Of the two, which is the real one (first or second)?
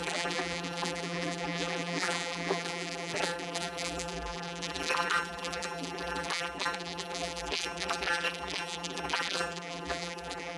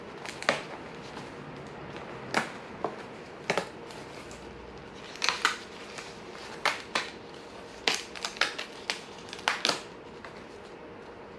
second